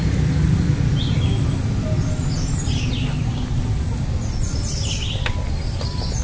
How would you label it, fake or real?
real